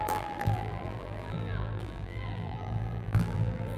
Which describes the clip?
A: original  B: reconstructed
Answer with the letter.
B